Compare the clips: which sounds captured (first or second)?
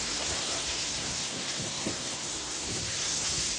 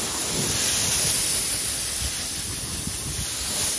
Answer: second